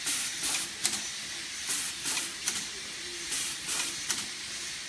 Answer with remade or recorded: recorded